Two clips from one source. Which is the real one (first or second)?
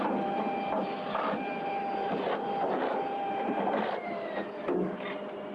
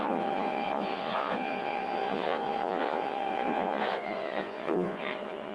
first